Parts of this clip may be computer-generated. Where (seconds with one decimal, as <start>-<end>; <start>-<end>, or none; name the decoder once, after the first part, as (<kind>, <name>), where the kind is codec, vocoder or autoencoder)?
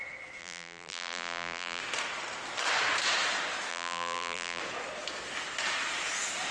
0.4-1.8 (vocoder, BigVGAN v2); 3.7-4.6